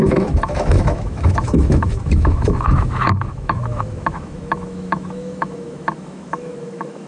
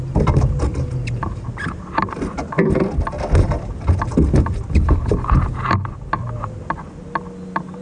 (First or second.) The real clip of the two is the second